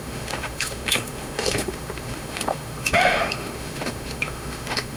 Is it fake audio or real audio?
fake